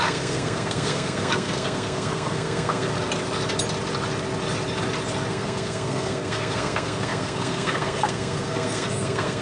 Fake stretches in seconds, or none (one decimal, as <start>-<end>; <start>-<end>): 0.0-2.9; 5.3-9.4